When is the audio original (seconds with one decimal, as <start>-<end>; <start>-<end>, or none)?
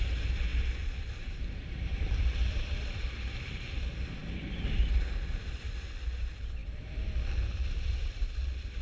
0.0-0.5; 3.6-8.8